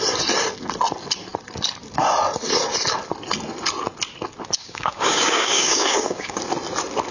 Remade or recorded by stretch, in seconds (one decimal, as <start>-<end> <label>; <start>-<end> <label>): 0.0-4.6 recorded; 4.6-6.4 remade; 6.4-7.1 recorded